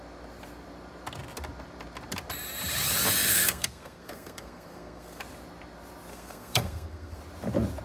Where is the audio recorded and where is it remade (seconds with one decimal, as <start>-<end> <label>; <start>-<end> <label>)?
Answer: 0.0-3.3 recorded; 3.3-5.2 remade; 5.2-6.1 recorded; 6.1-7.2 remade; 7.2-7.8 recorded